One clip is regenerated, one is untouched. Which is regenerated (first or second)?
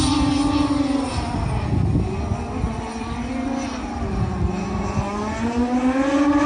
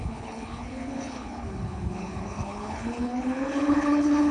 second